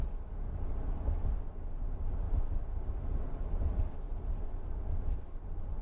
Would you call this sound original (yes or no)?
yes